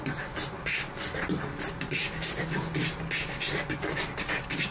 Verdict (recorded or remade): recorded